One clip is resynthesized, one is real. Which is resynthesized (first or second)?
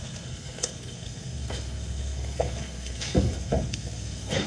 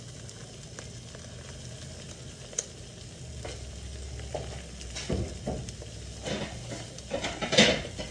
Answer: first